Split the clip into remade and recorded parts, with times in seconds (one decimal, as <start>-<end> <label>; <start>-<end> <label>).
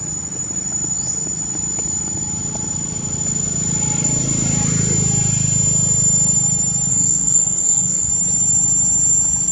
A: 0.0-6.9 recorded; 6.9-8.1 remade; 8.1-9.5 recorded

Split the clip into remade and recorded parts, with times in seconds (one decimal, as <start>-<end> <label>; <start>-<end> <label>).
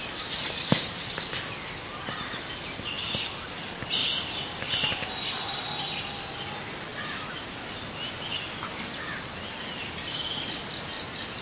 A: 0.0-11.4 recorded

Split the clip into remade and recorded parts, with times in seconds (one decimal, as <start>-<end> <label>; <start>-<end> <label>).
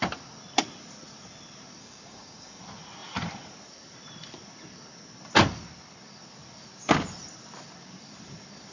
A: 0.0-1.8 recorded; 1.8-2.6 remade; 2.6-8.7 recorded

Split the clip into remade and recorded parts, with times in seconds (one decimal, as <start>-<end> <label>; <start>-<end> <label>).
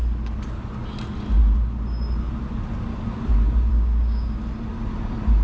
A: 0.0-3.7 recorded; 3.7-4.4 remade; 4.4-5.4 recorded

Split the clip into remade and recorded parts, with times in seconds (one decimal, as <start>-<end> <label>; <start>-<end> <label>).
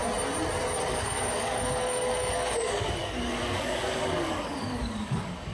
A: 0.0-0.8 recorded; 0.8-5.5 remade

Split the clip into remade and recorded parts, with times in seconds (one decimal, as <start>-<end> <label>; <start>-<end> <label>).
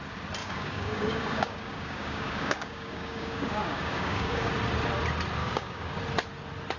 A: 0.0-0.4 recorded; 0.4-4.5 remade; 4.5-5.4 recorded; 5.4-6.0 remade; 6.0-6.8 recorded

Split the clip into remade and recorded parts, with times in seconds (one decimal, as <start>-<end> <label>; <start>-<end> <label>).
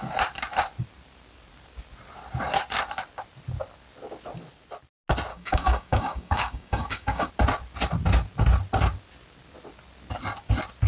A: 0.0-5.3 recorded; 5.3-7.3 remade; 7.3-10.9 recorded